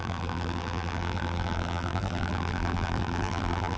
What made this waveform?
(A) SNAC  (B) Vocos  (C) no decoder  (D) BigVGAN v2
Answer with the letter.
D